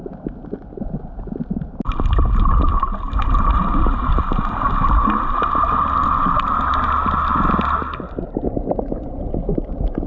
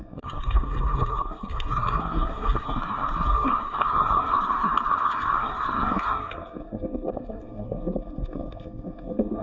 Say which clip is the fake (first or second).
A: second